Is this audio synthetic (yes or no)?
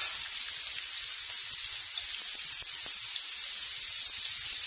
no